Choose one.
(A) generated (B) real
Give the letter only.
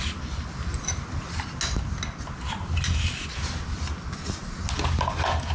B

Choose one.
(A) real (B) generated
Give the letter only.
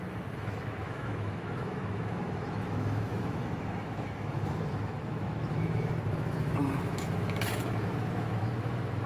B